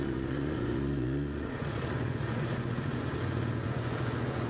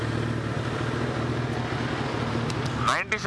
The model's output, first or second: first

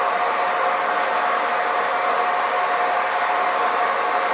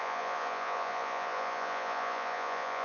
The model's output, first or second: second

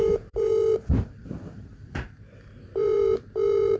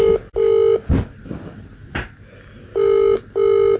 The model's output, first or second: first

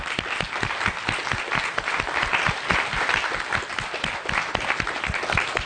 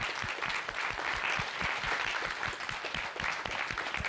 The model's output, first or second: first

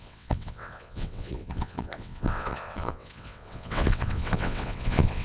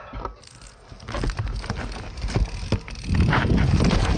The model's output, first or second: first